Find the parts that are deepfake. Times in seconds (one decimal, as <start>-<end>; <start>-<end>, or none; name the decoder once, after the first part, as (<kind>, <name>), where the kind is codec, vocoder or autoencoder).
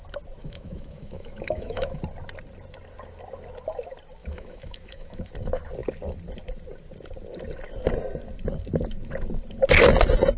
0.4-2.0 (autoencoder, DAC-VAE); 4.2-5.3